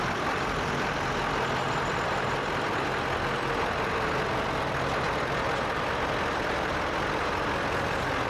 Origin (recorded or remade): recorded